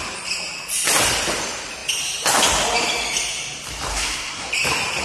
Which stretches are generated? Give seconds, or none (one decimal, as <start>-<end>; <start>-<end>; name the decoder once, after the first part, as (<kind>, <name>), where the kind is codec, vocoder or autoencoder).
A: 3.9-4.5 (codec, SNAC)

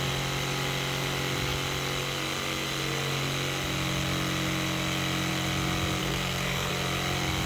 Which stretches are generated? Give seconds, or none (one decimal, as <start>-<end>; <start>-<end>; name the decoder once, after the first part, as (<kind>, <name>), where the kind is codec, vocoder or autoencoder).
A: 6.0-6.7 (codec, SNAC)

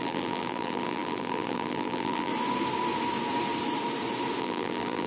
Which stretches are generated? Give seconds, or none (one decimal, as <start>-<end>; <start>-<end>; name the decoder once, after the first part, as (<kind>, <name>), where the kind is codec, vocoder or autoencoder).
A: 0.0-2.3 (vocoder, BigVGAN v2); 4.4-5.1

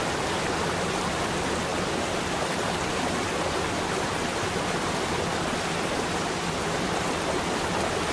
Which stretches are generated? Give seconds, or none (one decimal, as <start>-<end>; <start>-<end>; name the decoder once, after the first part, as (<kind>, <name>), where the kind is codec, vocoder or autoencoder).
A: 1.7-2.8 (vocoder, BigVGAN v2)

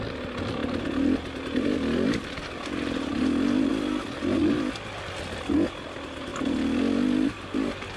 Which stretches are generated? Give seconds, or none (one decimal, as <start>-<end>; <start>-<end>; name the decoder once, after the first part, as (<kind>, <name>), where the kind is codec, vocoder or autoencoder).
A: none

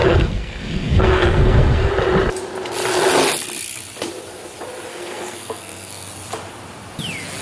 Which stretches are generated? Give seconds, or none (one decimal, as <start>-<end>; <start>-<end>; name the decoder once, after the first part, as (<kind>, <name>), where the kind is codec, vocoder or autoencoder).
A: 0.0-1.9 (codec, SNAC); 4.9-6.1